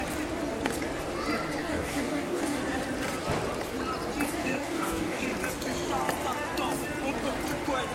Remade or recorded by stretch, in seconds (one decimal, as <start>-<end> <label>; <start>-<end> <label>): 0.0-1.6 recorded; 1.6-2.6 remade; 2.6-4.4 recorded; 4.4-5.2 remade; 5.2-7.9 recorded